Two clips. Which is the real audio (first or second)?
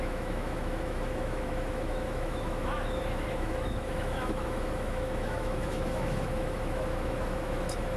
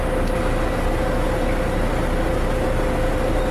second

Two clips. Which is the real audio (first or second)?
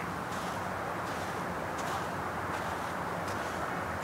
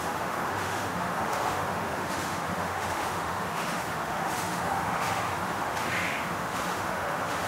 first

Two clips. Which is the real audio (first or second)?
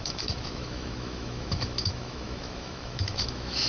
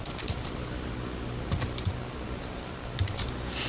second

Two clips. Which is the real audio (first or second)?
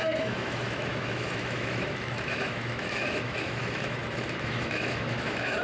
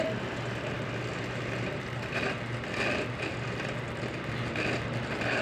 second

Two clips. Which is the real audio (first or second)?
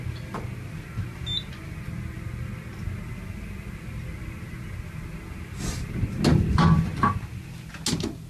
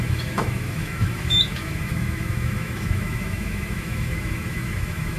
first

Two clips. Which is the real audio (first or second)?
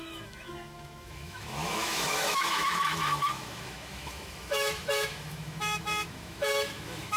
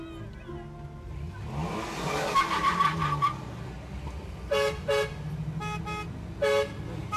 second